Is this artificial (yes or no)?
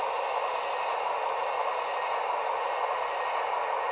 no